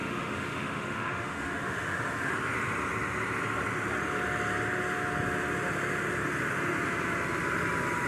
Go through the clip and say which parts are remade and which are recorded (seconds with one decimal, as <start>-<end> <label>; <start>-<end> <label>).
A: 0.0-2.3 remade; 2.3-8.1 recorded